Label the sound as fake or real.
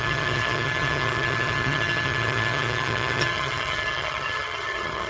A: fake